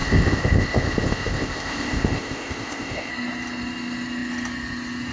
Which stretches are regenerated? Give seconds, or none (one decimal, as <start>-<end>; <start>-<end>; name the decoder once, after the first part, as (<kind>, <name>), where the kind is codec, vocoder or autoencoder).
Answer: 0.0-3.1 (codec, ZipCodec)